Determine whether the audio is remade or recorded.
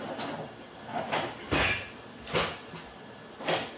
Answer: recorded